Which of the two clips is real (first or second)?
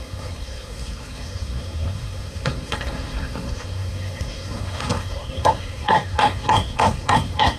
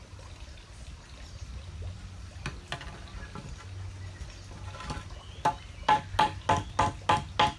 second